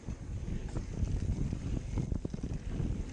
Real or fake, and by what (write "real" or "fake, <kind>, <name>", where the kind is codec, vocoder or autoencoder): real